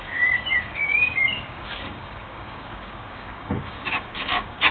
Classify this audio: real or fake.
fake